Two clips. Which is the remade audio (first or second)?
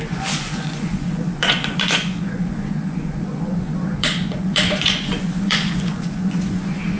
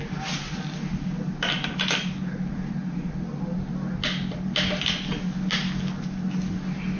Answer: first